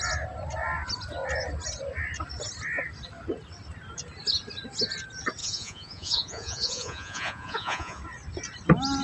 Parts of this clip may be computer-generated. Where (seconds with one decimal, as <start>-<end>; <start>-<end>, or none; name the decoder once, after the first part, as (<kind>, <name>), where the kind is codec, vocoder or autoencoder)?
5.4-8.0 (vocoder, Vocos)